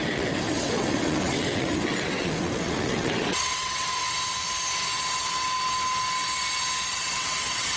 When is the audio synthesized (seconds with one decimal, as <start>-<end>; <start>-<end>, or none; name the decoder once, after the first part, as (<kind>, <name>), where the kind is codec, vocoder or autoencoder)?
0.0-4.0 (vocoder, WaveNeXt); 6.9-7.8